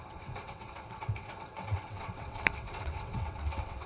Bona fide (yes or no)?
no